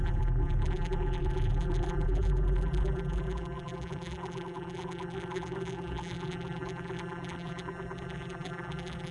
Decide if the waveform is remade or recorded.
remade